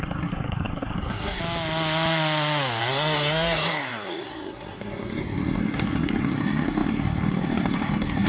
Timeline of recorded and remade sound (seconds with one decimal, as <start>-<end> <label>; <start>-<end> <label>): 0.0-1.4 remade; 1.4-2.8 recorded; 2.8-8.3 remade